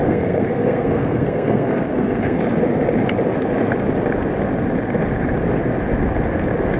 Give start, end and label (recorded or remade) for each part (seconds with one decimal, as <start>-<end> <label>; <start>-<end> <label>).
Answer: 0.0-2.4 remade; 2.4-6.8 recorded